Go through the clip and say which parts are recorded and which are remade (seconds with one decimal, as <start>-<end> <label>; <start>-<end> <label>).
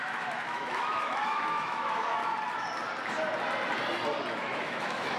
0.0-2.2 remade; 2.2-4.4 recorded; 4.4-5.2 remade